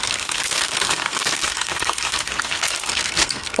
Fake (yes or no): yes